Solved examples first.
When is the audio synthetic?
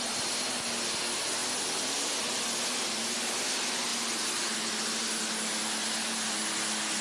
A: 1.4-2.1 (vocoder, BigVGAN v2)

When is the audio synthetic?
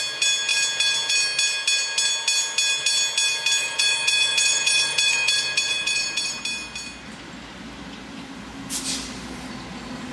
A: 3.6-6.4 (vocoder, Vocos)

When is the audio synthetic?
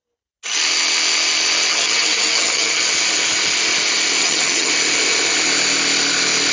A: 1.7-2.8 (vocoder, HiFi-GAN); 4.2-4.7